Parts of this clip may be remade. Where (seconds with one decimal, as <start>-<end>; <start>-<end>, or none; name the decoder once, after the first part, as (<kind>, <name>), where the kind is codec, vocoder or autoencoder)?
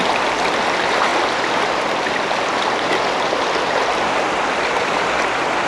none